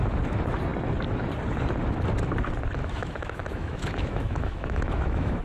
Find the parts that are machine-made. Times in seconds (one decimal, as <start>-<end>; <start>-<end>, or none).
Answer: 2.8-5.4